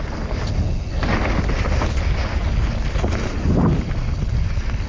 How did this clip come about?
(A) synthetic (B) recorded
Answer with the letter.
B